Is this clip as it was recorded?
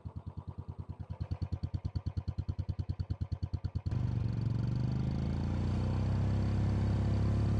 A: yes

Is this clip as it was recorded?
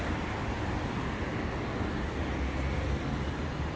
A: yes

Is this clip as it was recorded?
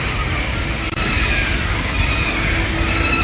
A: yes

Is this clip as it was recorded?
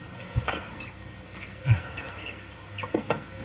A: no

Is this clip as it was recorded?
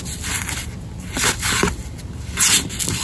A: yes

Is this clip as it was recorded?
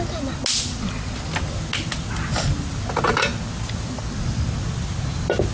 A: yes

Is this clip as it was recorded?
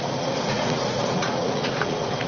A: no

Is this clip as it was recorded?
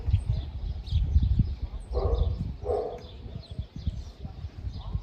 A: yes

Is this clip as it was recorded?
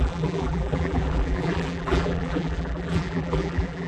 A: no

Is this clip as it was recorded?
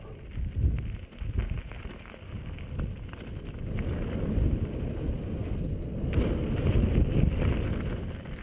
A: yes